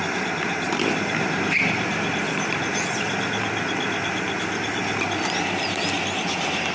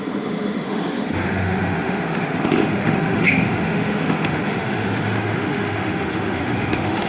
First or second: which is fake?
second